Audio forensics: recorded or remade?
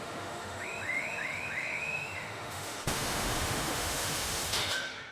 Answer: remade